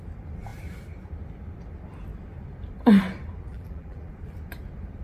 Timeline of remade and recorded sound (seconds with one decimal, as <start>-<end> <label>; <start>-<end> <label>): 0.0-3.5 recorded; 3.5-4.1 remade; 4.1-5.0 recorded